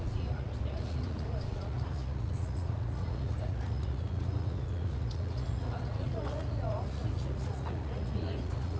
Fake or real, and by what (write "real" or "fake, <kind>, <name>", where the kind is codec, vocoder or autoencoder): fake, vocoder, Vocos